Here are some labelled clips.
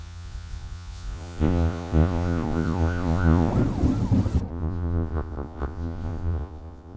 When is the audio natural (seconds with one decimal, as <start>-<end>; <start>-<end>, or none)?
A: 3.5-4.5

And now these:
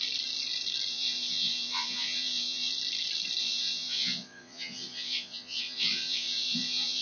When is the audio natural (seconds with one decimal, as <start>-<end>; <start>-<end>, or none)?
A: 0.0-0.9; 2.7-3.4

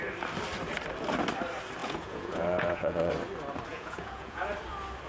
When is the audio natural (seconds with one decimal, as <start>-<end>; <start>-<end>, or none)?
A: 0.0-1.8; 3.1-3.7; 4.4-5.1